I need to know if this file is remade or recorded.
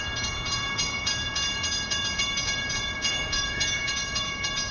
remade